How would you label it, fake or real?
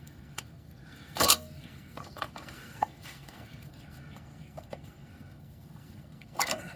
fake